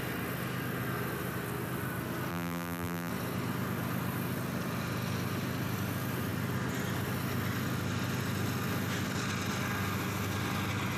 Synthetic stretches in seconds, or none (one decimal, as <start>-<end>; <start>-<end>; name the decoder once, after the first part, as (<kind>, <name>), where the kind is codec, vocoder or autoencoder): 2.3-3.1 (vocoder, BigVGAN v2)